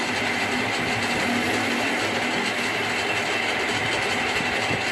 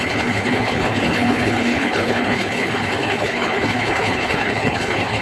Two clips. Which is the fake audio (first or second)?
second